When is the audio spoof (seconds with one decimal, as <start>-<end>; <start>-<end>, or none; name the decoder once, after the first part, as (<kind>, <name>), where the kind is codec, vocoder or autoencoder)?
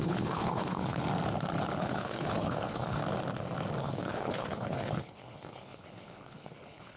0.0-1.0 (codec, HILCodec); 1.8-3.0; 3.8-7.0